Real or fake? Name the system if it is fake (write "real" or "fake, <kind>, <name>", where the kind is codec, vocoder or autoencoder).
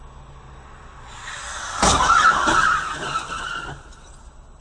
real